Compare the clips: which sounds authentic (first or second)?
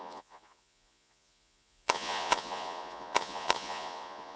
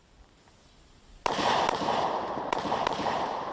second